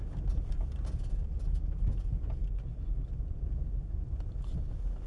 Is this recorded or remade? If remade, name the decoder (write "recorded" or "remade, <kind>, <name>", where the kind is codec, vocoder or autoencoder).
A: recorded